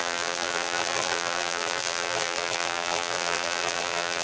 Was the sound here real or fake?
fake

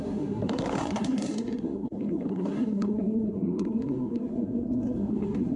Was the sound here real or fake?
fake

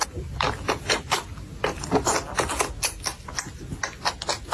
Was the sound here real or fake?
real